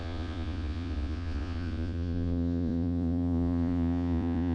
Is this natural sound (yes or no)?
no